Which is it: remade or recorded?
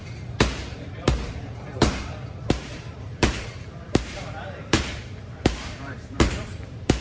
remade